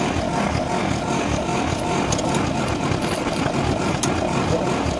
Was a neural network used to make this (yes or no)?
no